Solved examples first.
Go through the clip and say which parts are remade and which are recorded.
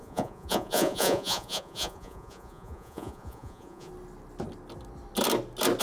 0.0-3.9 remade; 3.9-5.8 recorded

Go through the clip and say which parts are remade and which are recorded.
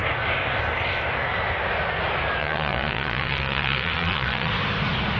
0.0-2.4 recorded; 2.4-4.5 remade; 4.5-5.2 recorded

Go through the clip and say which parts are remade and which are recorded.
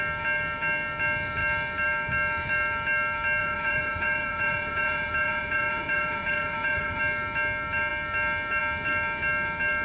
0.0-3.4 recorded; 3.4-7.0 remade; 7.0-9.8 recorded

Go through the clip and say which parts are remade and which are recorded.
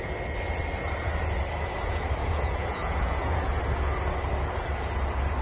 0.0-2.2 recorded; 2.2-3.6 remade; 3.6-5.4 recorded